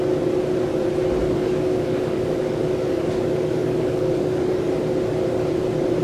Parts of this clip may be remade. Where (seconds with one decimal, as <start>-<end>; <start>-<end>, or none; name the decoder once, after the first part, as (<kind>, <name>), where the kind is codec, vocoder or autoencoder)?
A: 1.2-4.8 (codec, DAC)